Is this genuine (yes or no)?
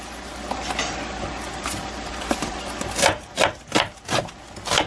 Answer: yes